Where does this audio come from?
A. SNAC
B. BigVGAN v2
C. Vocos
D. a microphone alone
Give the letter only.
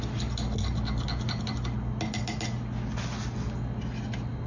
D